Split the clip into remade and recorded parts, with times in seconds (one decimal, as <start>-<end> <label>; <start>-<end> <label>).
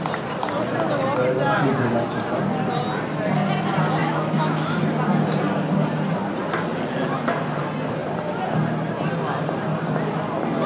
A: 0.0-4.0 recorded; 4.0-4.8 remade; 4.8-10.7 recorded